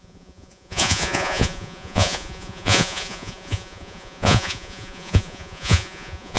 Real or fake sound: fake